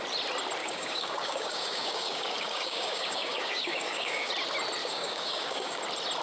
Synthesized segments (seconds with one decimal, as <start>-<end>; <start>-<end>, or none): 0.6-4.3; 4.8-5.8